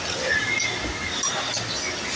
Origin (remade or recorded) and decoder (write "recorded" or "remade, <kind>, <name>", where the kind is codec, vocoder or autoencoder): recorded